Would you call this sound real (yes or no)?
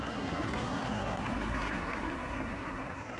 no